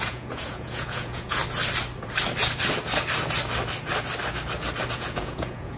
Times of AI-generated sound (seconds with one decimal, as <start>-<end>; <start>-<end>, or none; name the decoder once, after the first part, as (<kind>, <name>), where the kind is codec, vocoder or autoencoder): 0.0-1.4 (vocoder, Vocos); 4.9-5.8